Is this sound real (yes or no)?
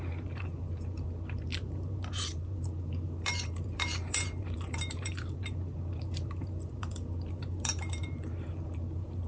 no